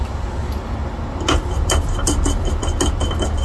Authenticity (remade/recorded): recorded